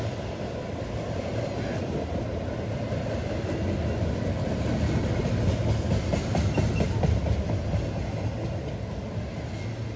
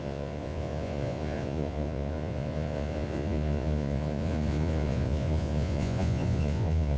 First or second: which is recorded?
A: first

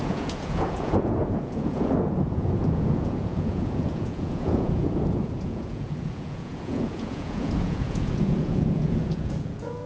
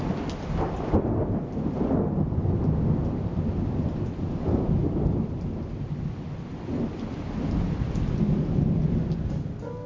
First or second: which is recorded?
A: second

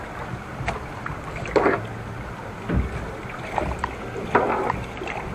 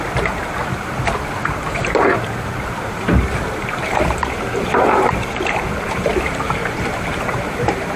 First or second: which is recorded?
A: first